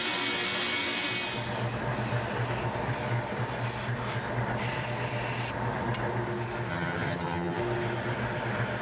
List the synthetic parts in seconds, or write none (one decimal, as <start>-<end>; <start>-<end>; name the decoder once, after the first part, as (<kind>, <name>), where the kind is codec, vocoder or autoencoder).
6.7-7.6 (vocoder, HiFi-GAN)

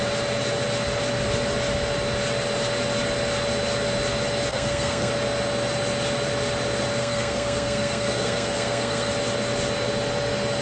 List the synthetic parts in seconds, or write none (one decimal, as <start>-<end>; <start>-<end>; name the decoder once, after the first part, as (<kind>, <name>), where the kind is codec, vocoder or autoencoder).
4.5-5.1 (codec, SNAC); 7.0-9.1

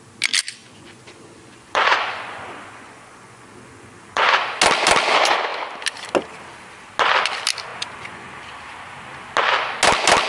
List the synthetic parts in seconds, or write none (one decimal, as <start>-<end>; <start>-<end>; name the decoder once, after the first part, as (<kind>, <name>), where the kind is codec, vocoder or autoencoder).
0.6-4.4 (vocoder, Vocos); 7.7-8.4

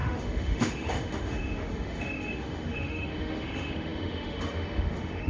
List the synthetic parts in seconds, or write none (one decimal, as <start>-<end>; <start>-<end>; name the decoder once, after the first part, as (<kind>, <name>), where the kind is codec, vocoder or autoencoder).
0.0-5.3 (autoencoder, DAC-VAE)

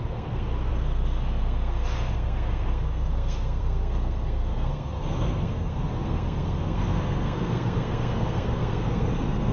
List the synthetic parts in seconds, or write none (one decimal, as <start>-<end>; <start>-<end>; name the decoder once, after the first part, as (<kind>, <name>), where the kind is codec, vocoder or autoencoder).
0.0-9.5 (codec, SNAC)